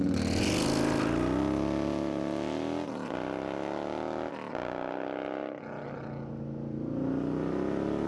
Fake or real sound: real